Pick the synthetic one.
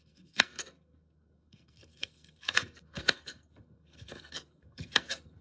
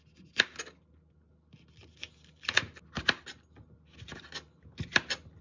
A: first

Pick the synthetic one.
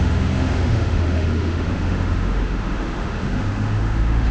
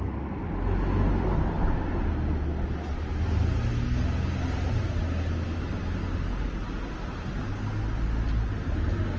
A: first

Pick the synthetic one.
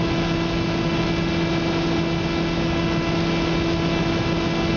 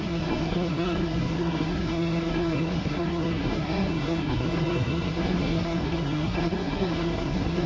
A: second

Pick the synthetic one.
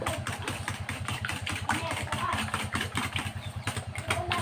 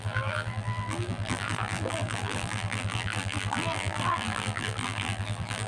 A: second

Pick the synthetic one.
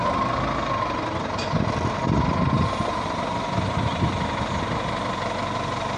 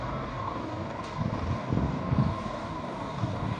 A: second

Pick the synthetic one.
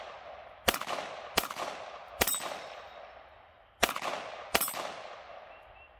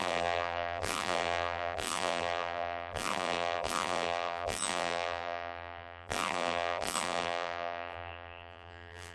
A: second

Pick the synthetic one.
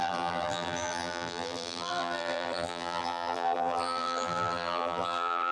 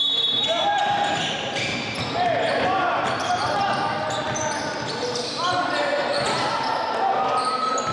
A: first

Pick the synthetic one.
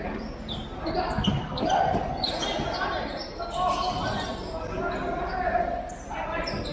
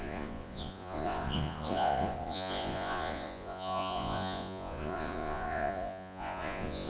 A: second